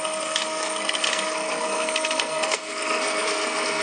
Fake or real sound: fake